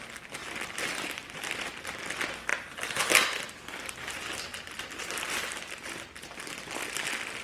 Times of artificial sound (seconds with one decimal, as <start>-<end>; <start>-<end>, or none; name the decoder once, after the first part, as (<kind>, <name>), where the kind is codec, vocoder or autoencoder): 0.4-2.0 (vocoder, BigVGAN v2); 2.5-3.5; 4.5-5.2